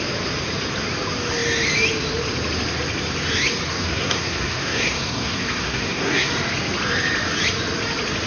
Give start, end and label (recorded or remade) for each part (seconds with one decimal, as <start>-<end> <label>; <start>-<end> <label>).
0.0-3.7 recorded; 3.7-6.3 remade; 6.3-8.3 recorded